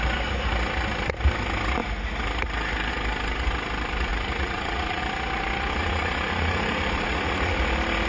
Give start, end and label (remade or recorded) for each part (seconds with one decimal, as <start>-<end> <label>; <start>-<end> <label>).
0.0-4.1 recorded; 4.1-5.0 remade; 5.0-5.8 recorded; 5.8-7.6 remade; 7.6-8.1 recorded